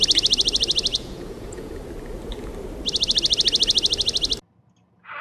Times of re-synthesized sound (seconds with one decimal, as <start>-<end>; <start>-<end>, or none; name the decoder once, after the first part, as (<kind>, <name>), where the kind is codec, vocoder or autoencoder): 0.9-1.7 (vocoder, Vocos)